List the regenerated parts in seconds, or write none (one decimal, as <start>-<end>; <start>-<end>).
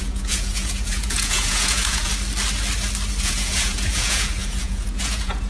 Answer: 0.0-2.1; 3.2-5.5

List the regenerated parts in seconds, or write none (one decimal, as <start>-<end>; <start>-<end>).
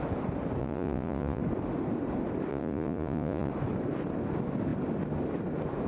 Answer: 0.6-1.4; 2.5-3.5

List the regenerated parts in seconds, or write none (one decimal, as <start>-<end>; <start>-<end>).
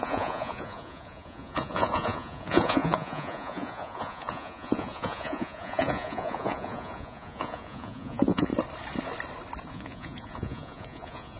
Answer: 0.0-8.5; 9.7-11.4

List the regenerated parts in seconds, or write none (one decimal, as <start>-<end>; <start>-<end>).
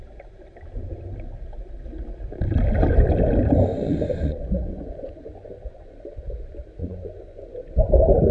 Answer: 3.7-6.0; 6.8-7.7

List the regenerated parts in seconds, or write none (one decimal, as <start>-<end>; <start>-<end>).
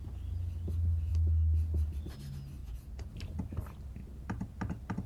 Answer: 2.6-3.1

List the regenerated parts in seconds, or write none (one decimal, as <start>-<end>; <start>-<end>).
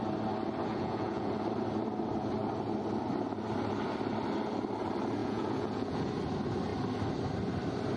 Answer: 0.7-1.3; 5.2-6.1